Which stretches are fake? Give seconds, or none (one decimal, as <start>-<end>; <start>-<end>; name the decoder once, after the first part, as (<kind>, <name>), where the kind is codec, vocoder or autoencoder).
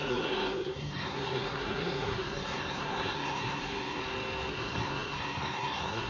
0.0-4.0 (codec, SNAC); 4.5-6.1